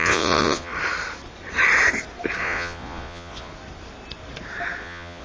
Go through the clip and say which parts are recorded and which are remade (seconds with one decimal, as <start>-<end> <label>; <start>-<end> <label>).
0.0-0.7 remade; 0.7-2.4 recorded; 2.4-3.5 remade; 3.5-4.8 recorded; 4.8-5.2 remade